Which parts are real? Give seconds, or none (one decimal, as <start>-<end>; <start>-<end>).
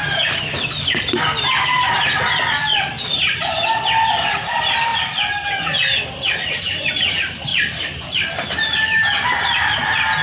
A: 4.9-6.2